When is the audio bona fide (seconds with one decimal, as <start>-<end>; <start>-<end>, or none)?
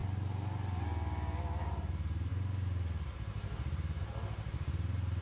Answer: 0.0-5.2